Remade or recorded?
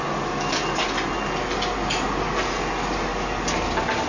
recorded